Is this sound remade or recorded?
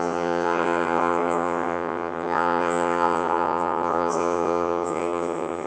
remade